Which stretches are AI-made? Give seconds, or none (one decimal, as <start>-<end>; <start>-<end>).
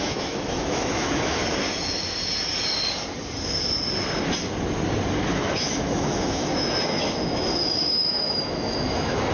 0.0-1.4; 5.2-9.3